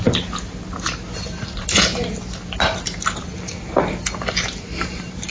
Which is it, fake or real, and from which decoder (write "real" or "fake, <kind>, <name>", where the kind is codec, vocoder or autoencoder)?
real